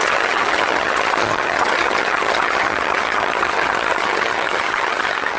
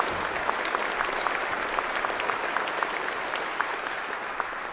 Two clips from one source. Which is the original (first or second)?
second